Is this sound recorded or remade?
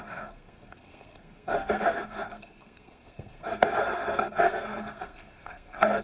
remade